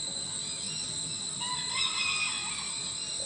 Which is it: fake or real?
real